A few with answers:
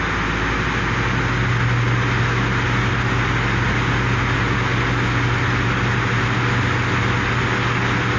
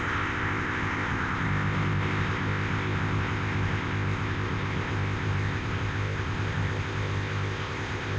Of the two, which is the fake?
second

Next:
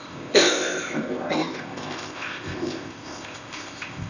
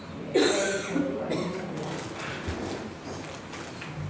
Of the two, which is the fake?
first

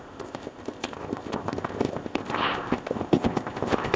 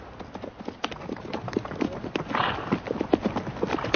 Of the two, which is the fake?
first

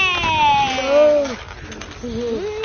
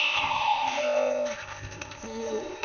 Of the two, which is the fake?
second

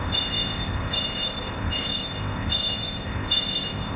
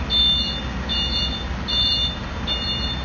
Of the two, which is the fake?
first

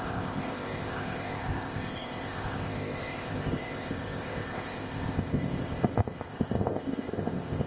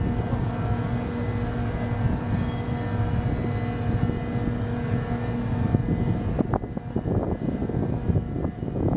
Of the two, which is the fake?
first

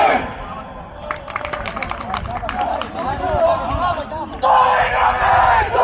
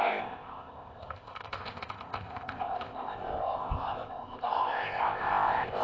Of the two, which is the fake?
second